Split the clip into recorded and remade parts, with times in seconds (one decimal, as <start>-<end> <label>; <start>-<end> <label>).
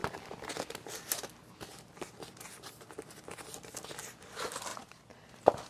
0.0-5.7 recorded